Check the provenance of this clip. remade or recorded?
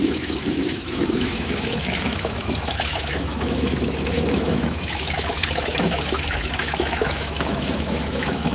remade